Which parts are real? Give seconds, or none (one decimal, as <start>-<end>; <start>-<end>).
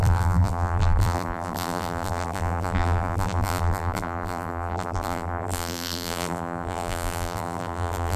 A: none